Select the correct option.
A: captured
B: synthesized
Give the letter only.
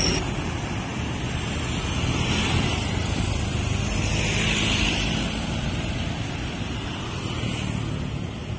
A